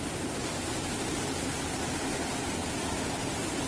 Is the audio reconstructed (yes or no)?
no